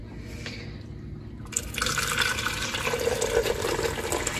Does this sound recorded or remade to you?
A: recorded